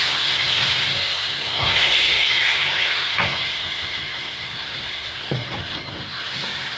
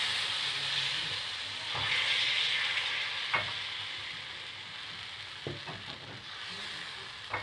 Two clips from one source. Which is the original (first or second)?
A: second